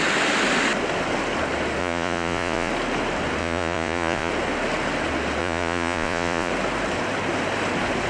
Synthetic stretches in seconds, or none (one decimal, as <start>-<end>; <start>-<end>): 1.8-2.7; 3.4-4.3; 5.4-6.5